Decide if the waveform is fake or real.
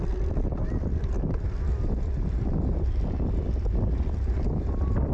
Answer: real